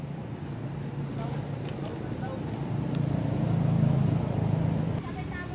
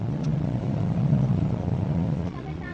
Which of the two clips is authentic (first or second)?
first